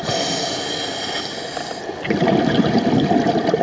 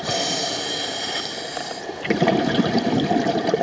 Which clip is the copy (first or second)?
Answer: second